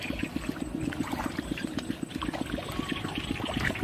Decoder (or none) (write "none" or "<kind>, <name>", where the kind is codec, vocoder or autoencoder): none